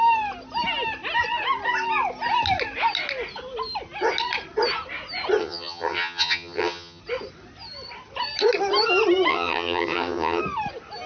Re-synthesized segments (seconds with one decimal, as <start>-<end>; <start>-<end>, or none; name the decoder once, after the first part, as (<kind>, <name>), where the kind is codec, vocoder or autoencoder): 5.4-7.0 (vocoder, HiFi-GAN); 9.3-10.4